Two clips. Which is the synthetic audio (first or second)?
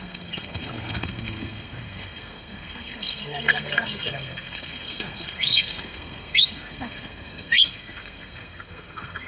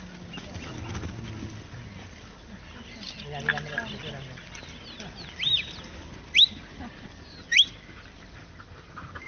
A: first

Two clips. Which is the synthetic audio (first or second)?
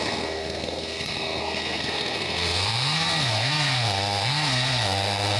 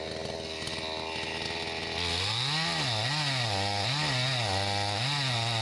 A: first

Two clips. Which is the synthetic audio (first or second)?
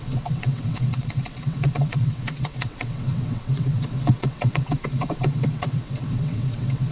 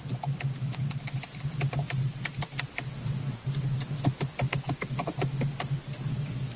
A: first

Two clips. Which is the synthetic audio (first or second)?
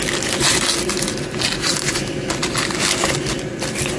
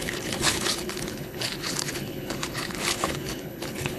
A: second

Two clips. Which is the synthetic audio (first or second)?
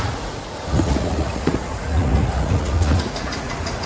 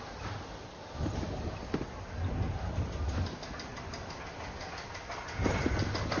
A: first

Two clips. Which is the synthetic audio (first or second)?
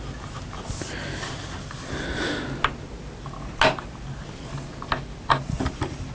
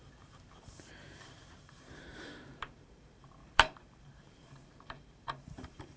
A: second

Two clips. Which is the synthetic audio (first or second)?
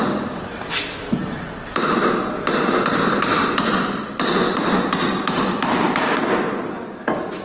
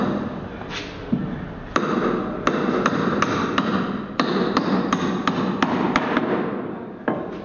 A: first